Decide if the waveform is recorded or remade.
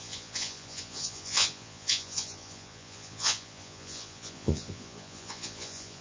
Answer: remade